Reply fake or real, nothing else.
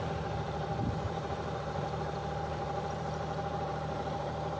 fake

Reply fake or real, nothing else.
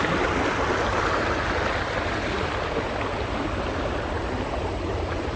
real